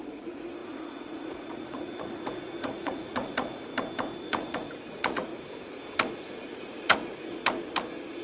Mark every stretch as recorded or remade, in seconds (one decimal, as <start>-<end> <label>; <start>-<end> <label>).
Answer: 0.0-3.7 remade; 3.7-4.2 recorded; 4.2-5.3 remade; 5.3-6.2 recorded; 6.2-7.4 remade; 7.4-8.2 recorded